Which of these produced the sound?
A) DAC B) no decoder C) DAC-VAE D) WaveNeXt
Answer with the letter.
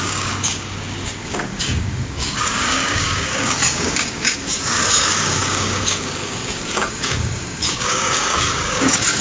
A